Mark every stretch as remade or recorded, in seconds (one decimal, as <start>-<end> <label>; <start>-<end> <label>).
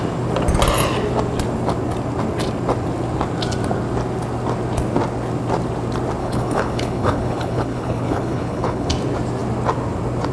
0.0-6.2 recorded; 6.2-8.9 remade; 8.9-10.3 recorded